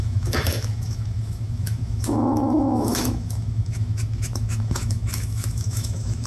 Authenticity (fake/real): fake